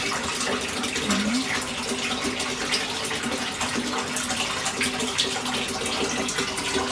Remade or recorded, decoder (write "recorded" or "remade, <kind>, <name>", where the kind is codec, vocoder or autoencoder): recorded